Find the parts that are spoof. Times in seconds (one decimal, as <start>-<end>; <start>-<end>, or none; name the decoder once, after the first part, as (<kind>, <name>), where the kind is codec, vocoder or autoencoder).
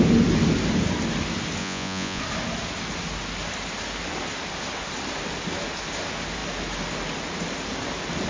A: 1.6-2.2 (vocoder, Vocos)